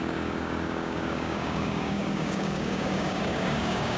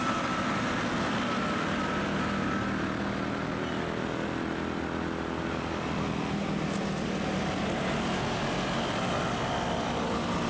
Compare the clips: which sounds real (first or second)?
second